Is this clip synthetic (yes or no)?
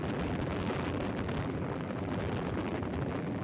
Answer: yes